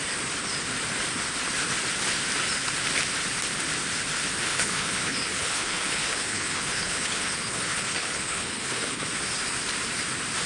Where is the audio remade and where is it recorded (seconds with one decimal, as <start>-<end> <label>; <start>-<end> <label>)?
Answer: 0.0-4.4 recorded; 4.4-9.0 remade; 9.0-10.5 recorded